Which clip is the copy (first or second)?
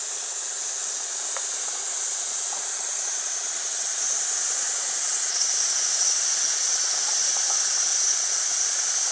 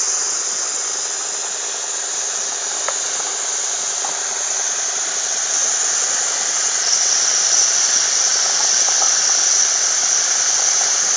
first